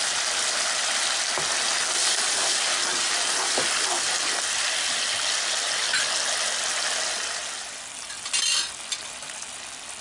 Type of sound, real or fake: real